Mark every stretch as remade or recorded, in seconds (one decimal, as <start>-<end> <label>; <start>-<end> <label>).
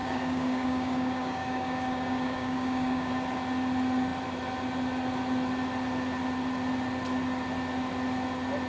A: 0.0-3.1 remade; 3.1-8.7 recorded